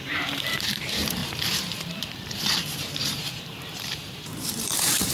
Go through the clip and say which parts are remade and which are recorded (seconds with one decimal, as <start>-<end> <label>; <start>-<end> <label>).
0.0-5.1 remade